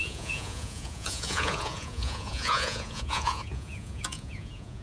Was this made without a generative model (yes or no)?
no